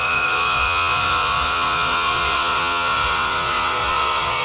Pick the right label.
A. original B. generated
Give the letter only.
B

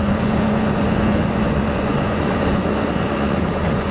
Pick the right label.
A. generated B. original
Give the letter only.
A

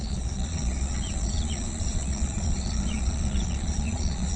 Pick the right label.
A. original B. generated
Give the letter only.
B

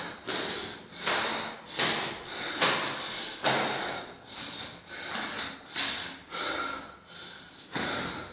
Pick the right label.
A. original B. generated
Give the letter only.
A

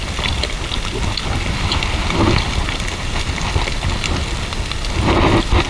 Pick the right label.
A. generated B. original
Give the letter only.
B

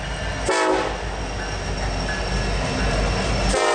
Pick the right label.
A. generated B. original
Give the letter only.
B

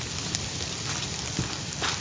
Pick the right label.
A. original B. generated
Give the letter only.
A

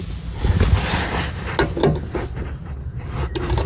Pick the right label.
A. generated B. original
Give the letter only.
B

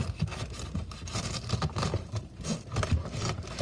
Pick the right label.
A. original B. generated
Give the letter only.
A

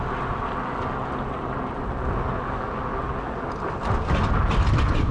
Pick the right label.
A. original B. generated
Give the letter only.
A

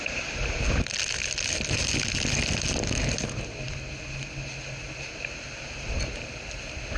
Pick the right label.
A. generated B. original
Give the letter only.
B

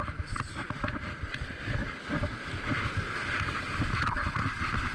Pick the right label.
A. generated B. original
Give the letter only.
B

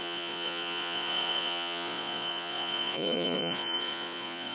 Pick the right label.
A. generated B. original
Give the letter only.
A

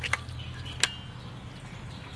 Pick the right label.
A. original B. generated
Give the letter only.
A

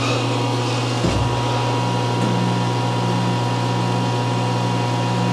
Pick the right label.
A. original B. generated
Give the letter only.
A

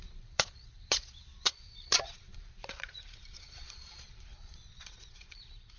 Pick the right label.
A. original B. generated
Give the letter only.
B